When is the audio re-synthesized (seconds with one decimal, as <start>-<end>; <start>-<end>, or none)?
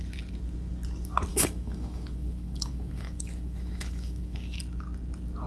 1.3-4.6